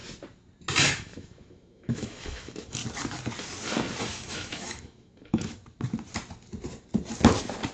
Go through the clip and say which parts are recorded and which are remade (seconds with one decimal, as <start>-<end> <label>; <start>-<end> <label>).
0.0-0.9 recorded; 0.9-2.8 remade; 2.8-4.0 recorded; 4.0-5.6 remade; 5.6-7.7 recorded